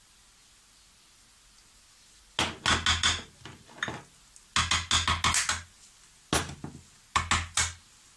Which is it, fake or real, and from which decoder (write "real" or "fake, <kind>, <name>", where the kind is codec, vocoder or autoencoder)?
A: real